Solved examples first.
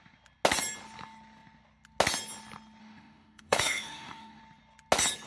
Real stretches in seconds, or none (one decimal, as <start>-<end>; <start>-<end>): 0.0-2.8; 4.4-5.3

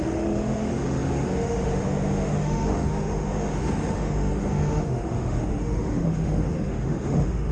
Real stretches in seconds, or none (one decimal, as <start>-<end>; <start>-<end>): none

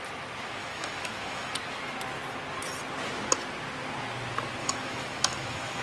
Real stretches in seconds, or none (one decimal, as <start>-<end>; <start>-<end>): 0.0-0.6; 1.5-4.6

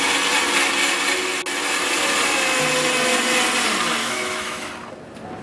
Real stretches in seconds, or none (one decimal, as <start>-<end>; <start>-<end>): 0.0-4.0; 4.7-5.4

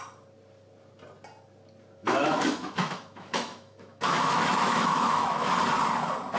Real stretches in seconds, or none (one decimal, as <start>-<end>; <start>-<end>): 0.0-2.0; 5.5-6.4

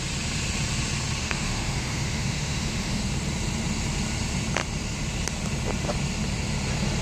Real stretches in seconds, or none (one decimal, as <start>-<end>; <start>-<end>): 0.0-1.2; 3.0-7.0

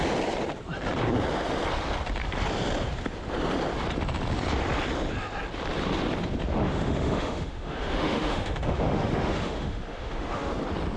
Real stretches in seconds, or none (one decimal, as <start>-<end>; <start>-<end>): 0.0-6.6; 10.5-11.0

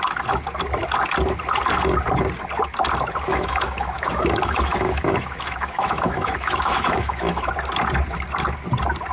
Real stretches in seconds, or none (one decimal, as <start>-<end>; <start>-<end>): 0.0-3.3; 7.5-9.1